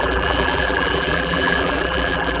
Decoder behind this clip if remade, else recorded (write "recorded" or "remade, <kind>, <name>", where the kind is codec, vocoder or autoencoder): remade, vocoder, BigVGAN v2